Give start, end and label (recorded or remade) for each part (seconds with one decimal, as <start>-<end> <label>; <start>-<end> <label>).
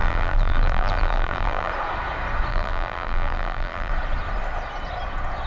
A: 0.0-1.7 remade; 1.7-2.5 recorded; 2.5-3.9 remade; 3.9-5.5 recorded